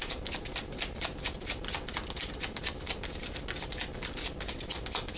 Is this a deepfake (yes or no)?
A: no